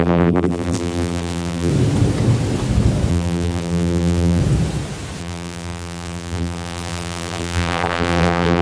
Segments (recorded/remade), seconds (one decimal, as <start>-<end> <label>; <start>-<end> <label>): 0.0-1.7 remade; 1.7-3.1 recorded; 3.1-4.4 remade; 4.4-5.2 recorded; 5.2-8.6 remade